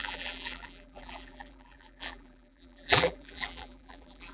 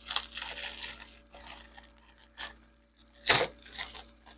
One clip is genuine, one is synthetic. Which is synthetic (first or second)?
first